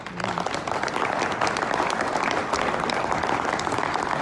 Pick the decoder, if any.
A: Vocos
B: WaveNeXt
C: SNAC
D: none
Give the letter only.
D